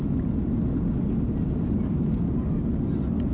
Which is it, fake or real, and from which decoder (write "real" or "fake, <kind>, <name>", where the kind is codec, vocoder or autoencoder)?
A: real